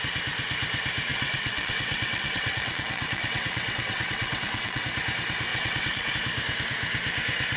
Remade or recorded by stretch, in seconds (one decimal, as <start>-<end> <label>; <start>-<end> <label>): 0.0-1.1 recorded; 1.1-4.8 remade; 4.8-5.5 recorded; 5.5-6.1 remade; 6.1-7.6 recorded

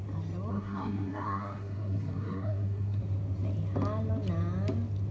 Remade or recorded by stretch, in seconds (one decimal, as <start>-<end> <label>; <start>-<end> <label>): 0.0-0.5 recorded; 0.5-3.0 remade; 3.0-5.1 recorded

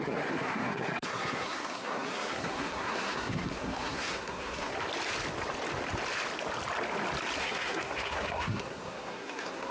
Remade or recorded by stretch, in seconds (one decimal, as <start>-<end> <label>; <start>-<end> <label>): 0.0-4.7 remade; 4.7-7.4 recorded; 7.4-9.7 remade